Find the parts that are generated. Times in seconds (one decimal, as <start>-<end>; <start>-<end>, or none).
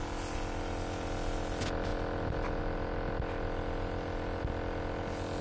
none